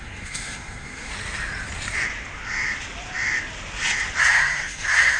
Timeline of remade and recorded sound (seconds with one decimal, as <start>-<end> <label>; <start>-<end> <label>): 0.0-1.1 remade; 1.1-4.2 recorded; 4.2-5.2 remade